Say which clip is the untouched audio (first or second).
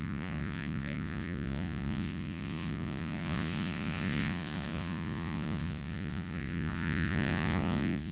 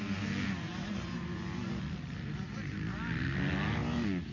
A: second